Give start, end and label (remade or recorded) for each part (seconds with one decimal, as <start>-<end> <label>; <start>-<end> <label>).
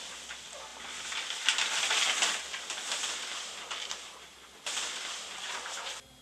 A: 0.0-6.2 recorded